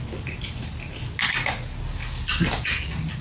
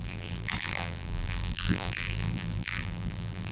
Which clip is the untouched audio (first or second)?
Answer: first